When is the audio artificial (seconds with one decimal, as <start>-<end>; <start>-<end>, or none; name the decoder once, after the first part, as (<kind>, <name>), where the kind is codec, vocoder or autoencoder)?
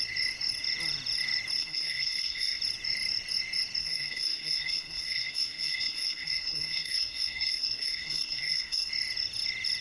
1.6-2.6 (codec, SNAC); 3.8-8.9